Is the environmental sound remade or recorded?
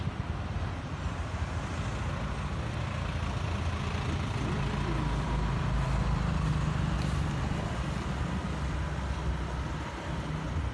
recorded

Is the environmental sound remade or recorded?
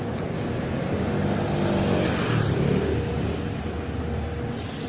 recorded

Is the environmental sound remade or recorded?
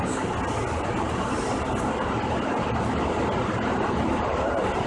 recorded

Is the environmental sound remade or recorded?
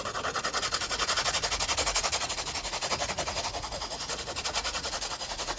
remade